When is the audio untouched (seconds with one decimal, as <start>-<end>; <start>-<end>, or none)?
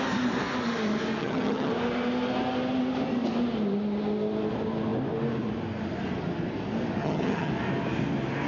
0.0-1.2; 1.7-7.0; 7.5-8.5